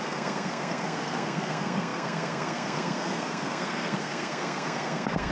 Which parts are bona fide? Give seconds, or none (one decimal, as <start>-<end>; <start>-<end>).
none